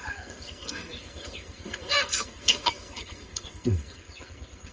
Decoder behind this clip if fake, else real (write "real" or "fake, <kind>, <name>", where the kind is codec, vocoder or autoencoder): fake, codec, SNAC